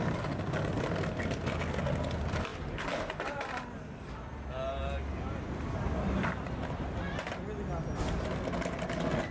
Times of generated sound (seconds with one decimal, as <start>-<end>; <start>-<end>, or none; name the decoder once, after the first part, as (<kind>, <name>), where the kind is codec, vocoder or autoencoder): none